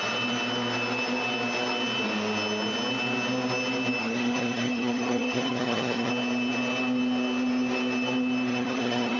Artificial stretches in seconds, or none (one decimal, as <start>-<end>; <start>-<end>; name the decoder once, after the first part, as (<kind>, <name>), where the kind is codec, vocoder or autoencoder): 4.0-6.1 (vocoder, HiFi-GAN); 8.5-9.2